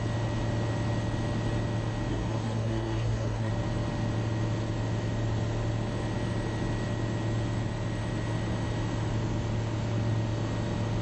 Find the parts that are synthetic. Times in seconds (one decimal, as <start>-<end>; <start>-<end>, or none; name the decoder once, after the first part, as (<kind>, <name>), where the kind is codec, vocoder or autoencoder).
2.1-3.5 (codec, SNAC)